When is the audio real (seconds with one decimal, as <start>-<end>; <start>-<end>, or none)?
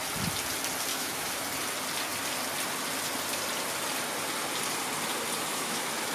0.0-0.9; 1.4-5.5